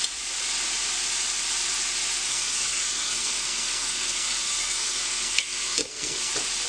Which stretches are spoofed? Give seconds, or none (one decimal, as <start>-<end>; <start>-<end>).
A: 2.3-6.3